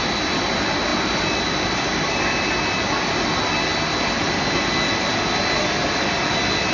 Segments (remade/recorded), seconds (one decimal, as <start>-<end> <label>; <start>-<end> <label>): 0.0-6.7 recorded